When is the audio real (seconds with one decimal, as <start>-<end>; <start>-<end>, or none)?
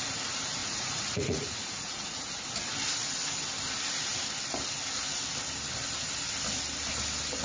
0.0-0.6; 2.2-7.4